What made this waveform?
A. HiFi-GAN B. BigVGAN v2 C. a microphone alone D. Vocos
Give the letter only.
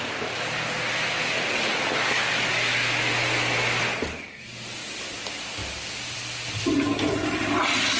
C